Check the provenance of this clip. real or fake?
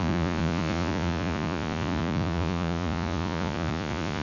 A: fake